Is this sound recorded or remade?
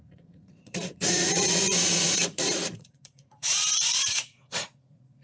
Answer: remade